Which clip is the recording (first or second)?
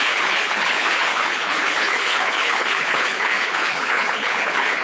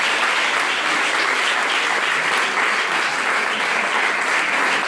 second